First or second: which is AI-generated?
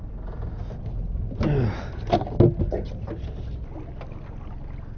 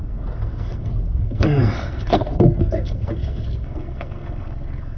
second